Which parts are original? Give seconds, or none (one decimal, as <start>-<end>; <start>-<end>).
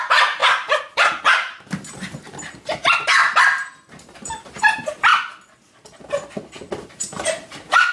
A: 3.2-3.9; 5.1-6.9